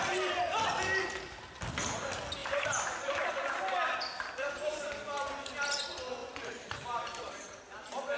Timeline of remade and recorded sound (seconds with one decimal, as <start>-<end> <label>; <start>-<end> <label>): 0.0-2.4 recorded; 2.4-3.2 remade; 3.2-6.2 recorded; 6.2-7.6 remade; 7.6-8.2 recorded